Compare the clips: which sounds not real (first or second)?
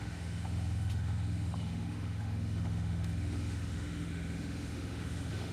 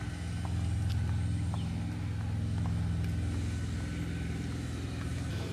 first